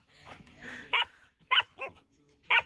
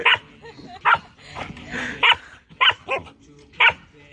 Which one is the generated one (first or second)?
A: first